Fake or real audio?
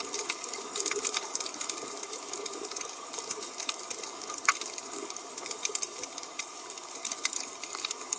fake